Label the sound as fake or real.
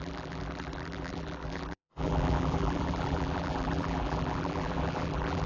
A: fake